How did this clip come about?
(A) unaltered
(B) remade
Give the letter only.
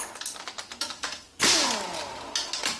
A